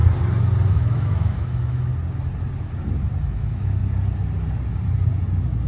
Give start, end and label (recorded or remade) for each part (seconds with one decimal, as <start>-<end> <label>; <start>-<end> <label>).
0.0-0.7 recorded; 0.7-1.9 remade; 1.9-3.2 recorded; 3.2-3.8 remade; 3.8-5.7 recorded